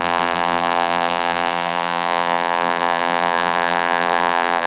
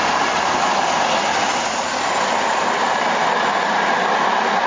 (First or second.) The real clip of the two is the second